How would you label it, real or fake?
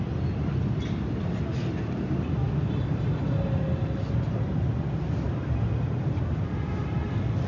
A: real